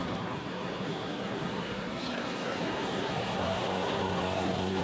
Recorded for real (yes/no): no